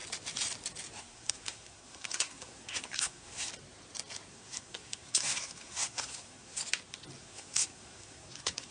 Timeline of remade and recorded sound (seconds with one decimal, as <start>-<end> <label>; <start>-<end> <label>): 0.0-1.0 recorded; 1.0-3.5 remade; 3.5-4.3 recorded; 4.3-6.6 remade; 6.6-7.2 recorded; 7.2-8.7 remade